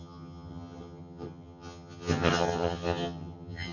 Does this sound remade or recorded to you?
remade